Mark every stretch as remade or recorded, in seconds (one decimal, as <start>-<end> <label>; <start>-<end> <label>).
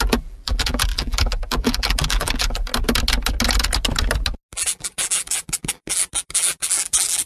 0.0-2.7 remade; 2.7-4.5 recorded; 4.5-7.3 remade